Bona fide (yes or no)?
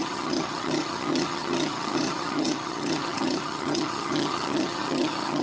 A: no